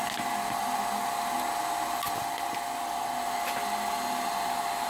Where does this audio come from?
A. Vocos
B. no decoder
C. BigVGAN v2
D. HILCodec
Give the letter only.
B